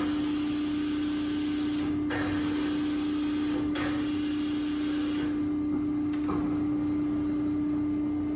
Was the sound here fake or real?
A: real